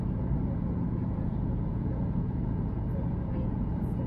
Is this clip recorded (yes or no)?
no